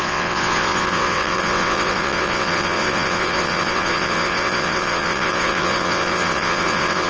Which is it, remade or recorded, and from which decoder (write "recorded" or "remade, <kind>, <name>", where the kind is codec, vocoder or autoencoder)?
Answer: remade, vocoder, WaveNeXt